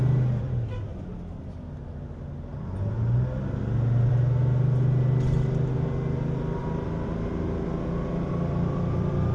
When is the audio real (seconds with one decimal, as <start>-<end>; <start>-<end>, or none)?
0.0-9.3

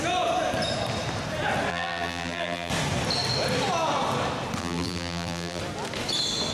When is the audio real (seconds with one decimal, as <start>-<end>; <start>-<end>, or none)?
0.0-1.7; 2.7-4.6; 5.6-6.5

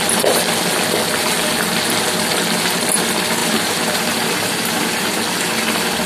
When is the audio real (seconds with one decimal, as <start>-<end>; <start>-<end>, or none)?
0.0-3.4; 5.2-6.1